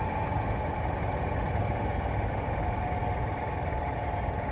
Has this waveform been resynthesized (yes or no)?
no